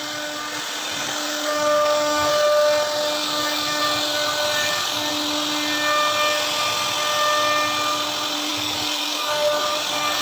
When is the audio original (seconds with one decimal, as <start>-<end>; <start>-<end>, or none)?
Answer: 0.0-1.0; 2.3-3.2; 3.8-4.6; 5.1-8.5